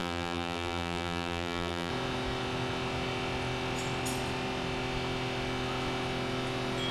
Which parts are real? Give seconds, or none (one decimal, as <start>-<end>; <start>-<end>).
1.9-6.9